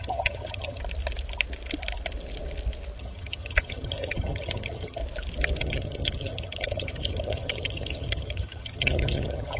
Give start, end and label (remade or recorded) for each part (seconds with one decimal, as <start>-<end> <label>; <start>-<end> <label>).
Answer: 0.0-0.8 remade; 0.8-3.0 recorded; 3.0-5.0 remade; 5.0-5.6 recorded; 5.6-9.6 remade